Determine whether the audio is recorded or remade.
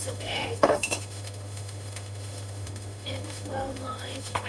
remade